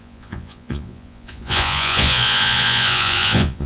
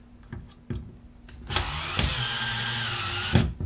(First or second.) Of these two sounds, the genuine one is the second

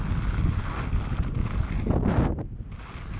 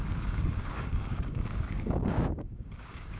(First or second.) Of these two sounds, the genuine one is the first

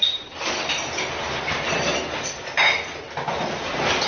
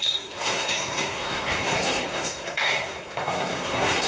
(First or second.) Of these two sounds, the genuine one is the first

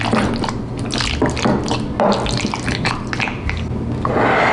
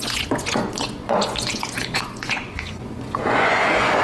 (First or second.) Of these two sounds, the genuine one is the first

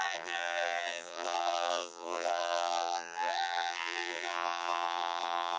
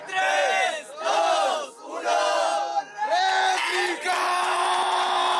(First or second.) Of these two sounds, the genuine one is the second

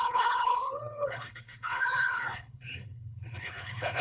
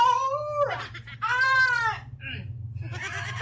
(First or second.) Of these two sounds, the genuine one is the second